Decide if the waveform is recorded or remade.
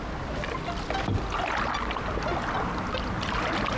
recorded